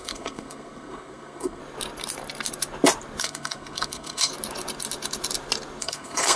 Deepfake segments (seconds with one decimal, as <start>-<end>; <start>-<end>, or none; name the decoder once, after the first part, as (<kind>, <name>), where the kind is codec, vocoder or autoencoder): 0.0-1.6 (codec, SNAC); 3.2-4.3; 5.8-6.4